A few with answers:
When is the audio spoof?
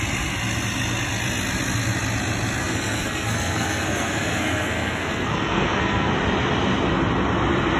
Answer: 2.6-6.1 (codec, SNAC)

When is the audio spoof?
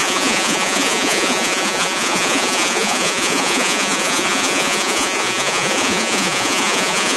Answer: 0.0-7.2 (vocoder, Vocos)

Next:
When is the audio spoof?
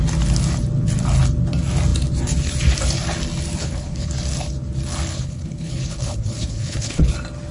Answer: 3.6-4.1 (codec, HILCodec); 5.1-7.1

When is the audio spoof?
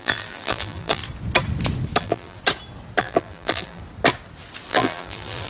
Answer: 0.0-1.0 (vocoder, BigVGAN v2); 2.0-2.4; 3.0-3.8; 4.7-5.5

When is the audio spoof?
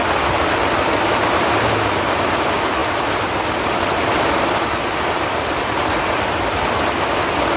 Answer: 2.8-4.8 (vocoder, BigVGAN v2)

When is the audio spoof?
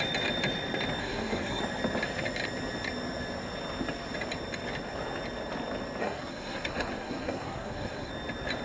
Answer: 1.0-1.6 (codec, SNAC); 6.0-8.1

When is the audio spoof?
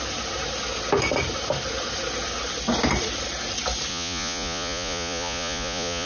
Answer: 3.9-6.1 (vocoder, Vocos)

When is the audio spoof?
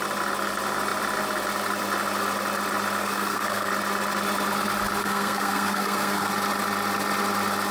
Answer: 3.0-3.7 (codec, SNAC); 5.0-6.3